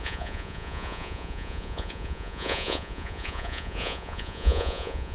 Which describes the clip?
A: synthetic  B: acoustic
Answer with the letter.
A